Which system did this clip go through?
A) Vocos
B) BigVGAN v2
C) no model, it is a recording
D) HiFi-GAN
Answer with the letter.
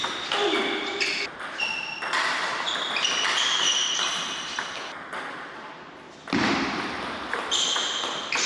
B